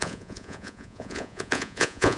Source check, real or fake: fake